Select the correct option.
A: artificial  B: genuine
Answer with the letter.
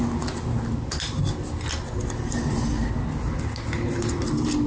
B